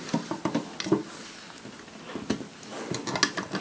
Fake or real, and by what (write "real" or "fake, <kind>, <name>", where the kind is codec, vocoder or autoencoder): real